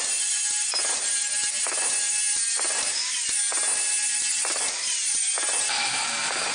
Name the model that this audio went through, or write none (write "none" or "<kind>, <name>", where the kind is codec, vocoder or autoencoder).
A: none